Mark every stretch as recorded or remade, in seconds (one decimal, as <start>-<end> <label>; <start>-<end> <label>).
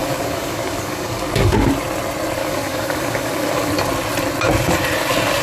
0.0-1.7 remade; 1.7-2.4 recorded; 2.4-3.7 remade; 3.7-5.4 recorded